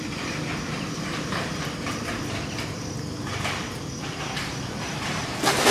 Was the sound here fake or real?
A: fake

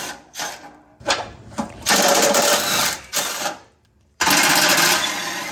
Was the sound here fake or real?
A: fake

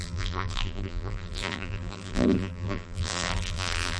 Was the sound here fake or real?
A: fake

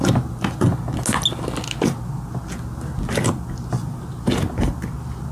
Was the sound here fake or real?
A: real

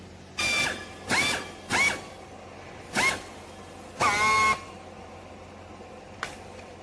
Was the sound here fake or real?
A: real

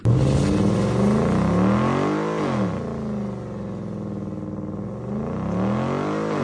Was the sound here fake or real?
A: real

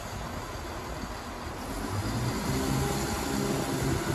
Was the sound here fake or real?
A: real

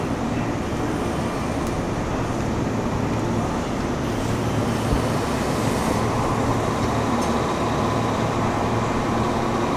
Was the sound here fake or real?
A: real